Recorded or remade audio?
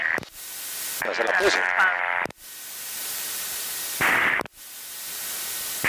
recorded